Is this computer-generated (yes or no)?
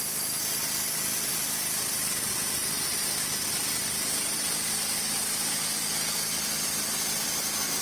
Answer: no